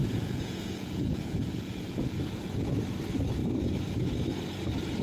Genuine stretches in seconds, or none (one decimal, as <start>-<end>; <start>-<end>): 2.7-5.0